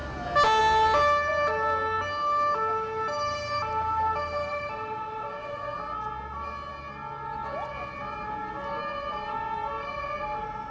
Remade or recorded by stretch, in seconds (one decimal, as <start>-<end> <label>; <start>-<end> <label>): 0.0-10.7 recorded